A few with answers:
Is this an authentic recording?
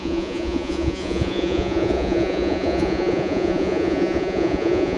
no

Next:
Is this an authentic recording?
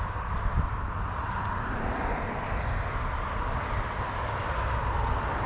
yes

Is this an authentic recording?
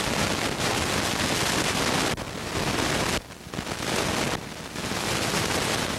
yes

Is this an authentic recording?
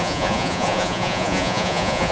no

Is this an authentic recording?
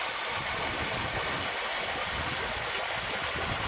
yes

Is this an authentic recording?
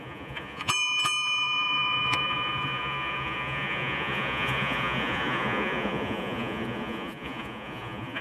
no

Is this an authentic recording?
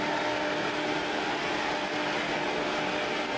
yes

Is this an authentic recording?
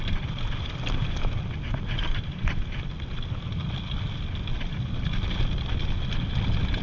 yes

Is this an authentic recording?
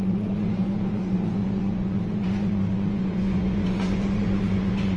no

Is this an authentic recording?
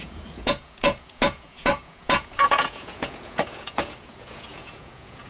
no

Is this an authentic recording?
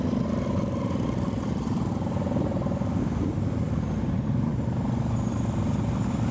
yes